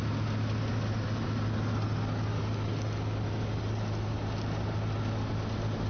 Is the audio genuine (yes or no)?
yes